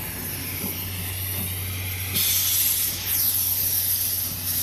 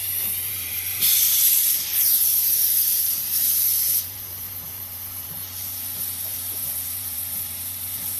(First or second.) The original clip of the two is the first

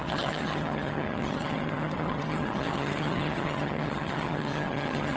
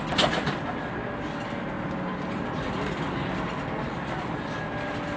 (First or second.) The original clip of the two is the second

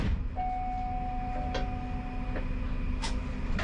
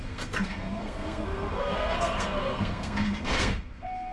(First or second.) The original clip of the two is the first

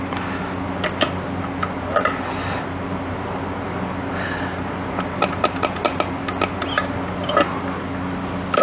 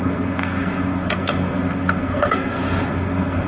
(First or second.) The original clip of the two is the first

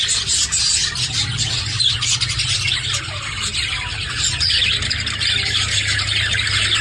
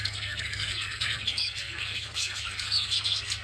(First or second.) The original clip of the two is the first